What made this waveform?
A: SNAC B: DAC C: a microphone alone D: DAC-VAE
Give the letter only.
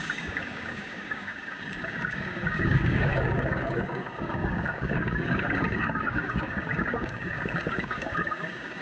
B